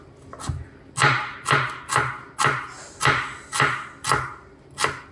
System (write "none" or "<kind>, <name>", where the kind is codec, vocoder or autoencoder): none